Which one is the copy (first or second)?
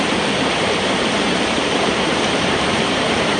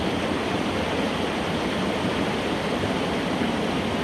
first